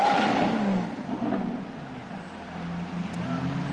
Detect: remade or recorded recorded